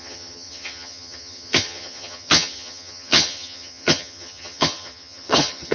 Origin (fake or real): fake